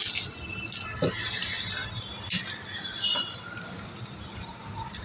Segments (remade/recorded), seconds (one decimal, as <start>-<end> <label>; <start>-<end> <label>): 0.0-5.0 recorded